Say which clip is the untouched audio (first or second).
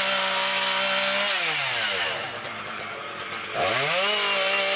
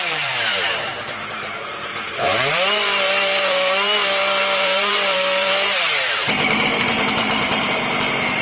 first